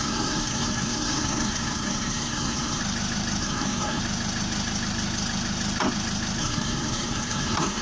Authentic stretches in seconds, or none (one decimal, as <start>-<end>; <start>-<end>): 2.8-3.4; 4.0-6.4